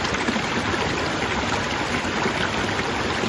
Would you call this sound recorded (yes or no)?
yes